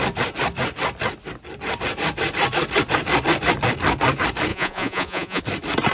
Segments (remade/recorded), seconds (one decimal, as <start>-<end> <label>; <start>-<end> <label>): 0.0-4.5 recorded; 4.5-5.4 remade; 5.4-5.9 recorded

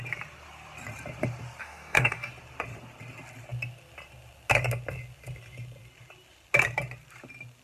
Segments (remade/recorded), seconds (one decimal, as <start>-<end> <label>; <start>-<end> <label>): 0.0-1.6 recorded; 1.6-2.3 remade; 2.3-7.6 recorded

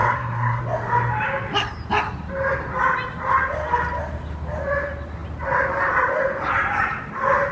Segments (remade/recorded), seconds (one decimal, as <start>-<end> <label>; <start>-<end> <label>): 0.0-0.6 remade; 0.6-7.5 recorded

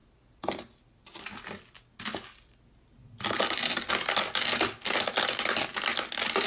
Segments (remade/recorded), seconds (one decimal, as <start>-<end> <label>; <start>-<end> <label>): 0.0-6.5 recorded

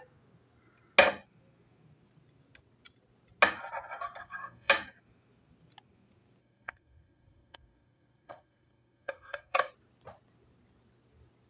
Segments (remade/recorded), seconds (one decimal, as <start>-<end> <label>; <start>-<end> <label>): 0.0-4.2 recorded; 4.2-4.7 remade; 4.7-6.4 recorded; 6.4-9.7 remade; 9.7-11.5 recorded

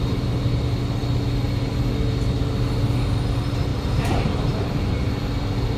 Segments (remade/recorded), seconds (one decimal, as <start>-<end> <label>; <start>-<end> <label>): 0.0-3.7 recorded; 3.7-5.1 remade; 5.1-5.8 recorded

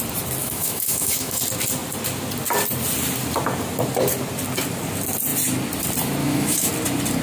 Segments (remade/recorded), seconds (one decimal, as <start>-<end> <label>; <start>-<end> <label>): 0.0-0.4 recorded; 0.4-1.4 remade; 1.4-6.2 recorded; 6.2-6.7 remade; 6.7-7.2 recorded

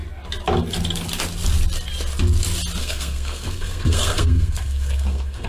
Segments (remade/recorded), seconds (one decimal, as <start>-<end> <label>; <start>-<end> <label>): 0.0-2.8 recorded; 2.8-5.5 remade